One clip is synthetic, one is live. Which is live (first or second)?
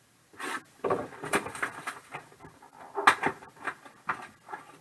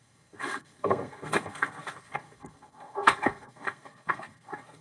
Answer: first